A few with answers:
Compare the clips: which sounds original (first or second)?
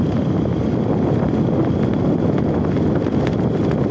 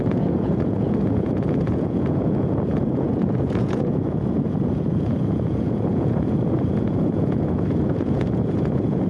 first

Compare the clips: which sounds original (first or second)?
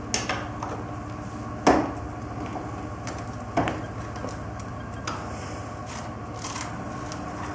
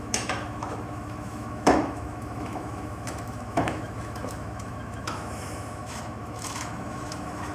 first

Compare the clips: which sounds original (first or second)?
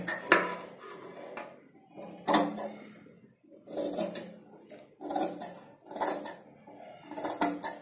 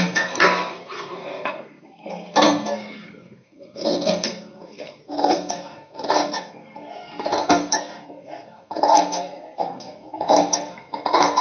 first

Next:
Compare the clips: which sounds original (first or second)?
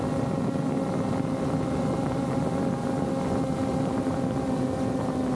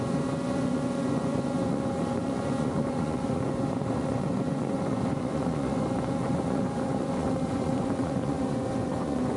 first